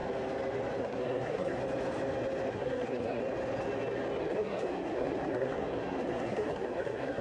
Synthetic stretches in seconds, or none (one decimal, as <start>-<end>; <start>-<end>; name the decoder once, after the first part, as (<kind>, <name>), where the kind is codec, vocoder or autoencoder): 0.8-1.6 (codec, SNAC); 2.5-3.2; 4.2-7.2